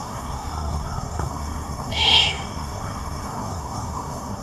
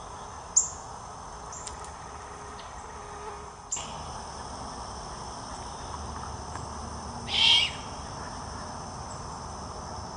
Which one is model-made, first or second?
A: first